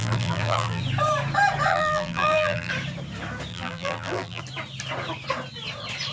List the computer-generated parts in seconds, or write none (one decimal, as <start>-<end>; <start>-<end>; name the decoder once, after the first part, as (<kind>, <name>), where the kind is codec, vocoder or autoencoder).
0.0-0.8 (vocoder, BigVGAN v2); 1.7-2.7; 3.5-4.4